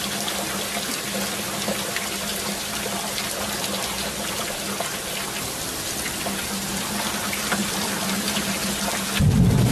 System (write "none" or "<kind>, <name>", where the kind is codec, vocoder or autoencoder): none